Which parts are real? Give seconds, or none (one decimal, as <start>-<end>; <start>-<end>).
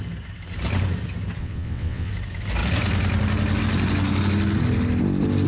0.0-1.4; 2.1-5.5